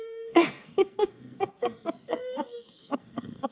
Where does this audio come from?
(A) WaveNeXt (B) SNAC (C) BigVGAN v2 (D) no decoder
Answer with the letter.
B